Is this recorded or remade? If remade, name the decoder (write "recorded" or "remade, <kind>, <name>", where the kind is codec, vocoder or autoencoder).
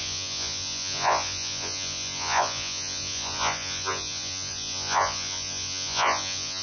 remade, vocoder, Vocos